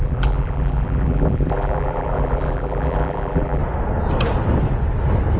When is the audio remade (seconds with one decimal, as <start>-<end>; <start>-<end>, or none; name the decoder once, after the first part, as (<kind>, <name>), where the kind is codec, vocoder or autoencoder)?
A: 0.0-3.6 (vocoder, BigVGAN v2)